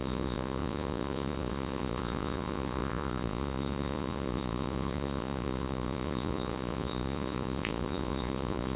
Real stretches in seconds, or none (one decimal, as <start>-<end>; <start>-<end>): none